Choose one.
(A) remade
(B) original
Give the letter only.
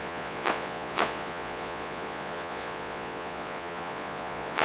A